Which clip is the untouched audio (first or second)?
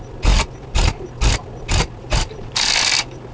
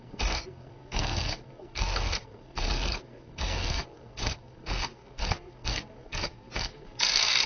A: first